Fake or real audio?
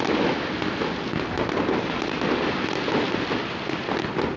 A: real